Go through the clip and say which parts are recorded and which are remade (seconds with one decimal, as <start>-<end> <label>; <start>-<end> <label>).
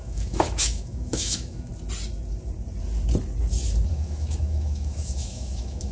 0.0-1.7 remade; 1.7-3.9 recorded; 3.9-5.9 remade